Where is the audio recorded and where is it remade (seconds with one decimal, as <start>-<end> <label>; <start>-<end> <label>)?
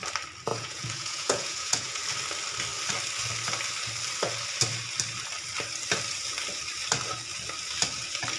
0.0-0.5 recorded; 0.5-2.0 remade; 2.0-8.4 recorded